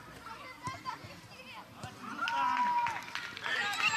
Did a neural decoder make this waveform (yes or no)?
no